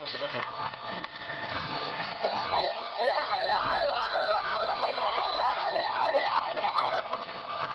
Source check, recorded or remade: remade